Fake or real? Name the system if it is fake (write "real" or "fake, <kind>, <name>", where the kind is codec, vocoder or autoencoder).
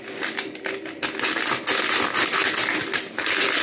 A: real